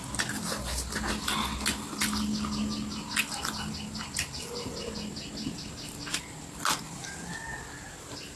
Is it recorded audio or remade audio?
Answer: recorded